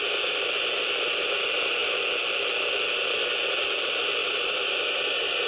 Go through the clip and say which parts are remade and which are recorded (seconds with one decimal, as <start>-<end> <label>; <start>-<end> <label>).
0.0-4.2 recorded; 4.2-5.5 remade